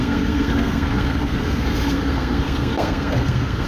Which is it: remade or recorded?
remade